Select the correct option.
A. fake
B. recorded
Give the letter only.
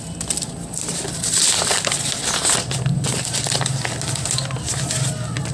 B